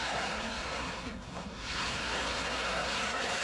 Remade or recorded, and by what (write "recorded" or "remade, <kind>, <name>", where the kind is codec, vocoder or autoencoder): remade, codec, SNAC